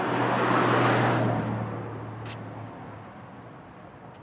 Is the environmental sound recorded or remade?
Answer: recorded